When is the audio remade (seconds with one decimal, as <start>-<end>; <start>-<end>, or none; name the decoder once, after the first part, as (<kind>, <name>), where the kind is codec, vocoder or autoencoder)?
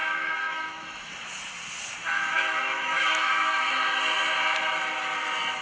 0.0-1.1 (autoencoder, DAC-VAE); 2.0-3.7